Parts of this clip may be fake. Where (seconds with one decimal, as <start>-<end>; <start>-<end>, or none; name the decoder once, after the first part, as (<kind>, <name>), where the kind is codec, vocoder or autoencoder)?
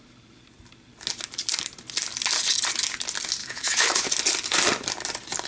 3.4-4.1 (autoencoder, DAC-VAE)